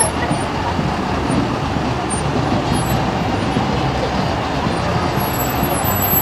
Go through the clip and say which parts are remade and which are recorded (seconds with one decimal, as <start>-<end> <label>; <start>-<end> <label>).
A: 0.0-6.2 recorded